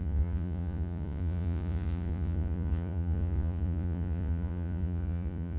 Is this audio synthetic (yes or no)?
yes